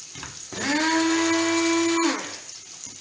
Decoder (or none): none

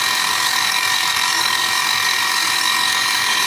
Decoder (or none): codec, DAC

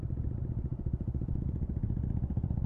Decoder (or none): none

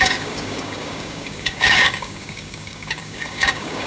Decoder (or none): codec, DAC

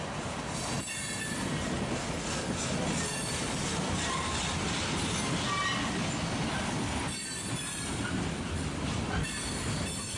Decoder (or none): none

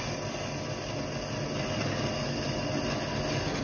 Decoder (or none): none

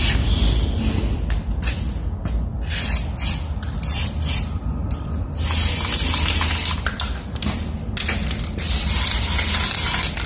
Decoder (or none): none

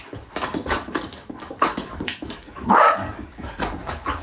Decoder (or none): codec, DAC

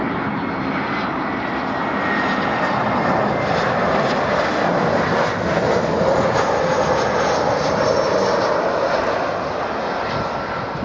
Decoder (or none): none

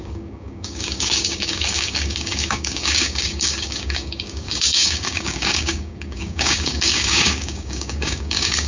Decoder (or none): codec, DAC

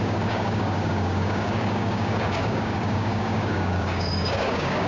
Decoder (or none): codec, DAC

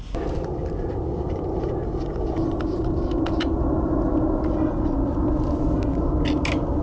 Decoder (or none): none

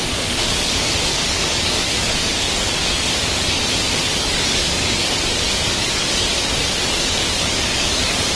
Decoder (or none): codec, DAC